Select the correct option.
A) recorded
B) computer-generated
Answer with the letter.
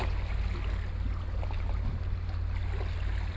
A